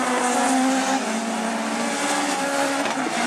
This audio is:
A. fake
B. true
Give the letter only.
B